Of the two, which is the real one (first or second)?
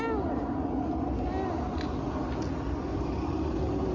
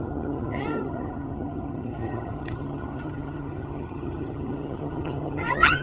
first